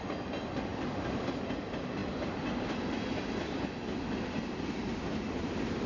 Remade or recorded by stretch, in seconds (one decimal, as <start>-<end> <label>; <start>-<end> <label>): 0.0-5.9 recorded